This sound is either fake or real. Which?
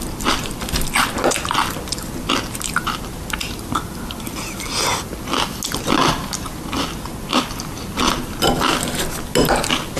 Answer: real